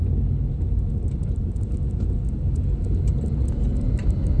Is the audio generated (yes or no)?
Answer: no